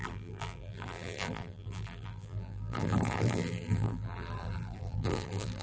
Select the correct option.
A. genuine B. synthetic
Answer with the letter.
B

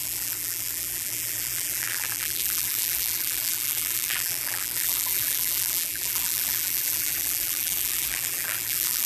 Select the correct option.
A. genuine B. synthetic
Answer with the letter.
B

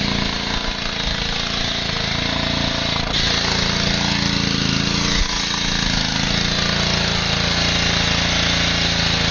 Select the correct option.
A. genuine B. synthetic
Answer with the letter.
A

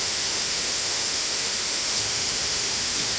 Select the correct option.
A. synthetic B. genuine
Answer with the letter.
A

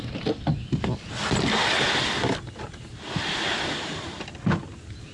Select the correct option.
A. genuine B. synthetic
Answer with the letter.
A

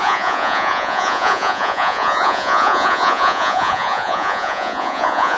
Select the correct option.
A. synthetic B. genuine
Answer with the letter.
A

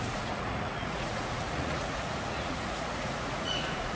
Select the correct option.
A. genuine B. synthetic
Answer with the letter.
B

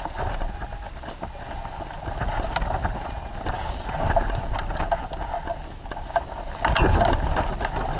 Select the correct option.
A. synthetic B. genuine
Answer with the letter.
B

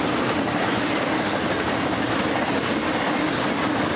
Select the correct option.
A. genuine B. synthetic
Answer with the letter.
A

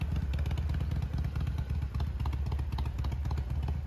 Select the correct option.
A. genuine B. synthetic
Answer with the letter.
A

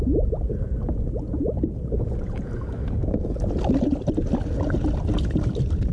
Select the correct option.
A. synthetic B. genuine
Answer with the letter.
B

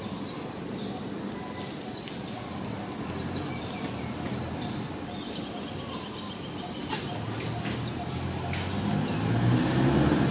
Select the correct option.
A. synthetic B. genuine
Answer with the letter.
B